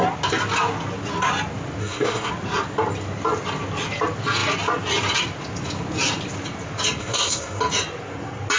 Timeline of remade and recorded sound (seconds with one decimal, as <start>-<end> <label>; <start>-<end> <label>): 0.0-1.8 recorded; 1.8-2.3 remade; 2.3-7.0 recorded; 7.0-7.6 remade; 7.6-8.6 recorded